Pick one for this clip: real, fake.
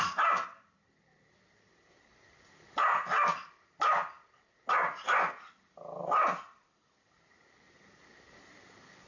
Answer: real